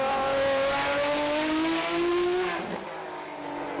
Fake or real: real